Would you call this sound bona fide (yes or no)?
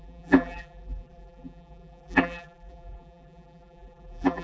no